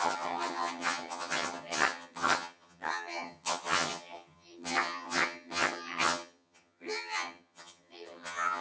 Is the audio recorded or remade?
remade